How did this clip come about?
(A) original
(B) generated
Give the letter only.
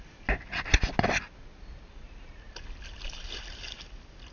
A